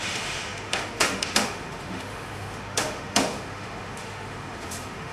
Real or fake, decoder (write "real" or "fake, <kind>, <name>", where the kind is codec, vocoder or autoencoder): fake, autoencoder, DAC-VAE